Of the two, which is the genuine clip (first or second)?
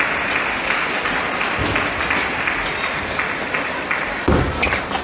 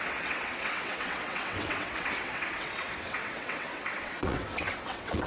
first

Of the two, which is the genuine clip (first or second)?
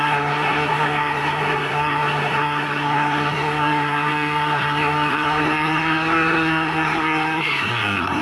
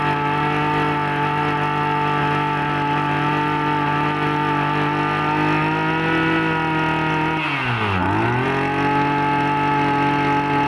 second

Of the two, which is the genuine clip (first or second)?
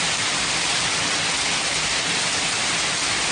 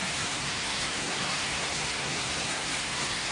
first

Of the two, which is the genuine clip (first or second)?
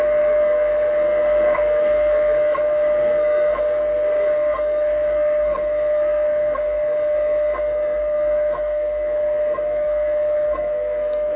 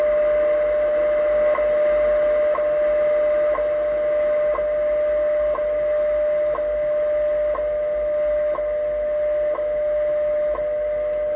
second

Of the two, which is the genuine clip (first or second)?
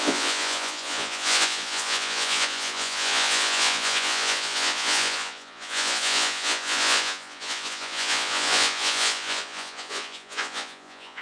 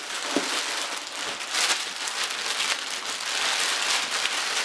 second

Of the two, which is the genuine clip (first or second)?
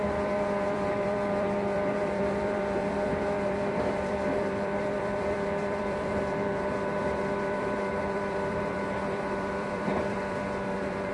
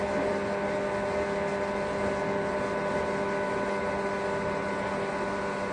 second